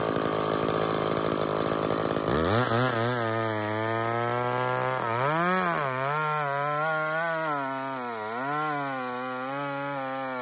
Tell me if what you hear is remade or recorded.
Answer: recorded